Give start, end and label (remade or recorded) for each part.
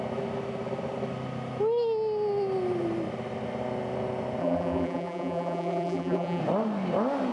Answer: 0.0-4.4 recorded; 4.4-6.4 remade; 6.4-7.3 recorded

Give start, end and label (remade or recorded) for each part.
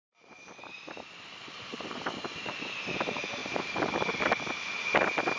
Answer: 0.0-5.4 recorded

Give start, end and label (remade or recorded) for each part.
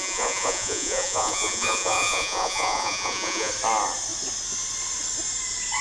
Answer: 0.0-3.5 remade; 3.5-5.8 recorded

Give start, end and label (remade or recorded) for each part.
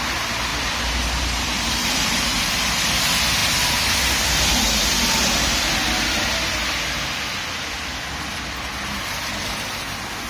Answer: 0.0-0.5 recorded; 0.5-3.0 remade; 3.0-10.3 recorded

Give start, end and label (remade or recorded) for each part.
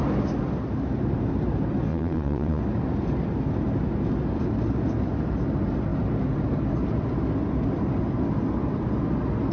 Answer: 0.0-1.9 recorded; 1.9-2.6 remade; 2.6-9.5 recorded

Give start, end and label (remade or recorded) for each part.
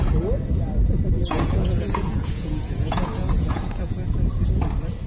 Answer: 0.0-1.2 recorded; 1.2-4.3 remade; 4.3-5.1 recorded